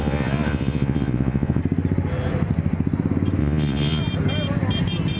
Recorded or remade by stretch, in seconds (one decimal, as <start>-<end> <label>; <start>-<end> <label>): 0.0-1.6 remade; 1.6-3.4 recorded; 3.4-4.0 remade; 4.0-5.2 recorded